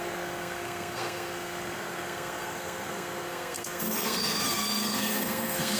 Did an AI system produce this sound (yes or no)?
yes